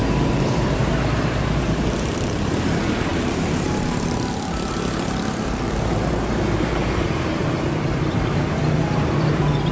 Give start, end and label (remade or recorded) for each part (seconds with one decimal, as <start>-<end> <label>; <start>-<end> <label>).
0.0-0.6 recorded; 0.6-9.7 remade